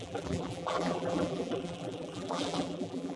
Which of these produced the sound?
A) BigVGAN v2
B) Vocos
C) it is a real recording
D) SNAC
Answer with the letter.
A